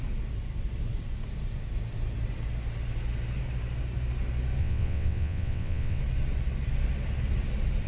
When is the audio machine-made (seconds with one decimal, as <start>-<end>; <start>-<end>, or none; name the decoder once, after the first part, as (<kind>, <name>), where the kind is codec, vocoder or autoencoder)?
4.6-6.0 (vocoder, WaveNeXt)